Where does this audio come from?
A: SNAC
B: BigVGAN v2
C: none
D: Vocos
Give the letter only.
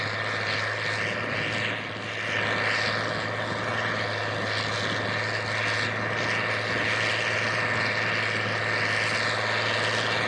C